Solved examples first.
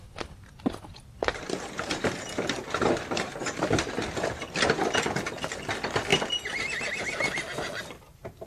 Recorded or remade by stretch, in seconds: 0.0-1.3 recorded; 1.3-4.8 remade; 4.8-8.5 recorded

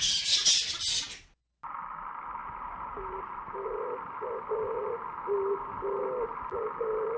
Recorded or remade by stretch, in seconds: 0.0-2.4 recorded; 2.4-3.2 remade; 3.2-7.2 recorded

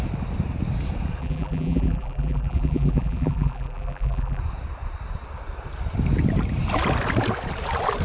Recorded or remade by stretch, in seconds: 0.0-1.2 recorded; 1.2-4.4 remade; 4.4-8.0 recorded

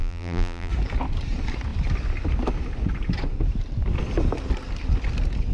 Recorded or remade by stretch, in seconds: 0.0-0.7 remade; 0.7-5.5 recorded

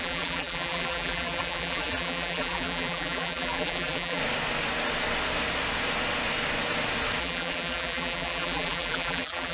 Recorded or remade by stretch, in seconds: 0.0-4.2 remade; 4.2-7.2 recorded; 7.2-9.5 remade